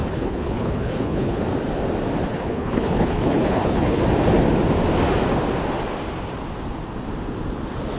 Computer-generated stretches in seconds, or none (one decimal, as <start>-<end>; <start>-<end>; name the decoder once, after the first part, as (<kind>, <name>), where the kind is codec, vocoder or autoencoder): 0.0-1.4 (codec, HILCodec); 2.3-4.0

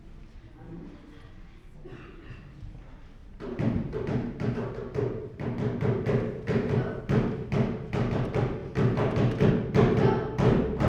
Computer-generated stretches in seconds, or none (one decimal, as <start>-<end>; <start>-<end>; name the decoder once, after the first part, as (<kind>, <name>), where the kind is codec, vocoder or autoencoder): 3.2-7.0 (vocoder, BigVGAN v2)